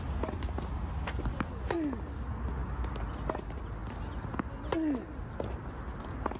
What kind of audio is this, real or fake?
real